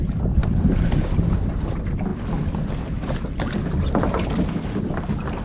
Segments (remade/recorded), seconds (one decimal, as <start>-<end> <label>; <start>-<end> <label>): 0.0-5.4 recorded